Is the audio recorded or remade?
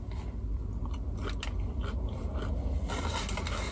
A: recorded